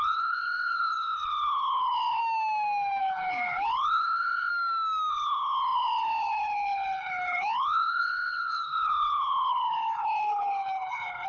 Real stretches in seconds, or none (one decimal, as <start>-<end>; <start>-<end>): 2.2-3.0; 4.5-5.1